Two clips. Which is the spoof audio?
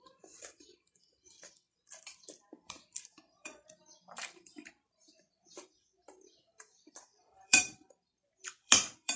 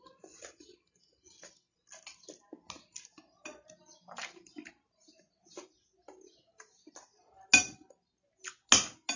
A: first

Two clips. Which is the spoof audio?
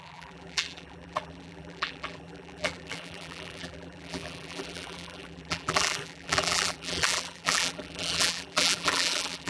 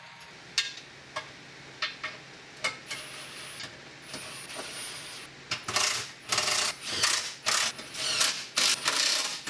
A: first